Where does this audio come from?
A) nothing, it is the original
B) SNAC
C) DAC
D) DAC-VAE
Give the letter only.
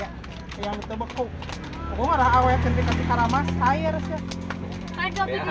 A